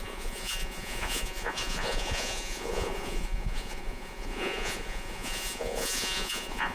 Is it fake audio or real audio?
fake